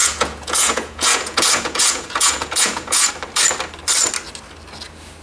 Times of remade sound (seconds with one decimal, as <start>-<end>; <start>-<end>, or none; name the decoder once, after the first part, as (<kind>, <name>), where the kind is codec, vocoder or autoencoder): 0.0-3.1 (vocoder, Vocos)